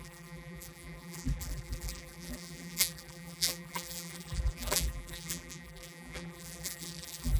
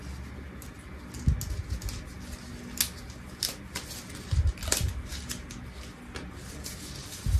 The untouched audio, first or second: second